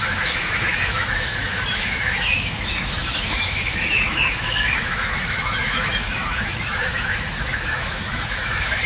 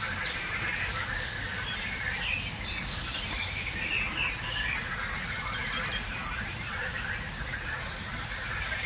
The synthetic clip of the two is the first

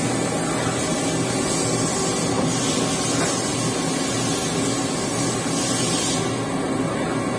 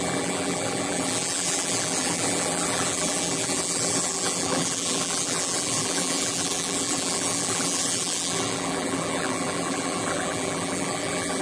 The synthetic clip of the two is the second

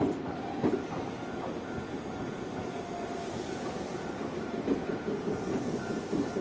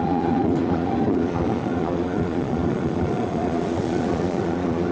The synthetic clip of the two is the second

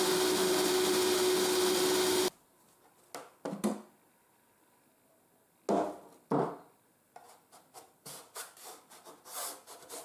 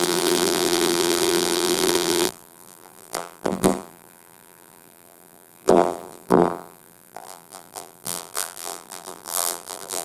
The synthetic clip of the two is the second